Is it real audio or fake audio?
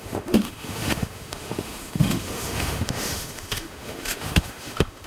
fake